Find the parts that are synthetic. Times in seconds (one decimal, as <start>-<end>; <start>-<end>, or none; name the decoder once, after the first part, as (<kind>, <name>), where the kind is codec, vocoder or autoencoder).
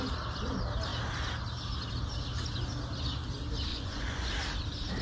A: 3.7-4.3 (vocoder, Vocos)